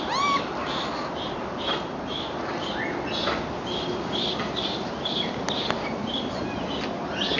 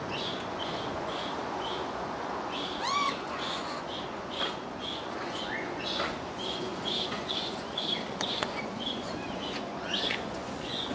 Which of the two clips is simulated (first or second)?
second